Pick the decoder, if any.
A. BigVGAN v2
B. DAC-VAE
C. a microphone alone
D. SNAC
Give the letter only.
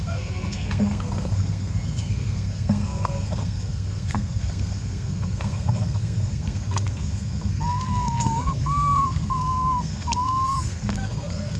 D